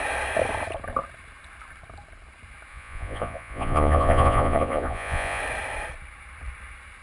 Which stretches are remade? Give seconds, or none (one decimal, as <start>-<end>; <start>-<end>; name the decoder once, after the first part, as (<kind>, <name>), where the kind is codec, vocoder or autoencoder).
2.7-5.4 (vocoder, Vocos)